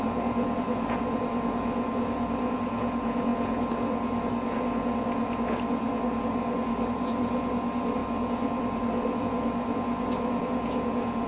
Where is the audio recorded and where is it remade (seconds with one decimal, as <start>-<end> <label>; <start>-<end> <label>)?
0.0-11.3 remade